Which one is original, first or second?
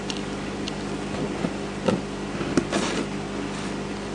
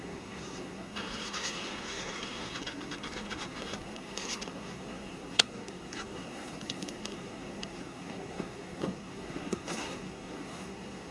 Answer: first